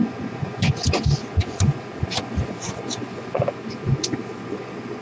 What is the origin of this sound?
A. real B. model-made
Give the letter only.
B